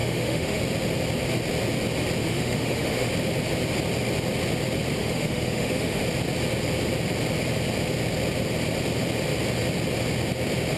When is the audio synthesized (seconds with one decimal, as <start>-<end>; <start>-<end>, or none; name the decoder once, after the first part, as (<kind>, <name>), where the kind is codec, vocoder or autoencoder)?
0.0-0.6 (autoencoder, DAC-VAE); 2.2-3.1; 5.0-6.0